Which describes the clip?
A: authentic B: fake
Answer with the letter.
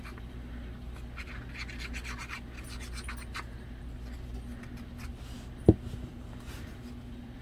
A